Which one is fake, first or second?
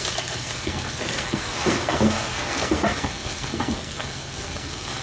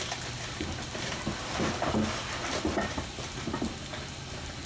first